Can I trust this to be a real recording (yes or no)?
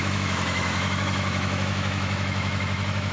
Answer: no